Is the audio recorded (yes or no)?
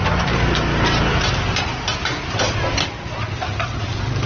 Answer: yes